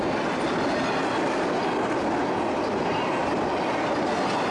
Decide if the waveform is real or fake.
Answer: real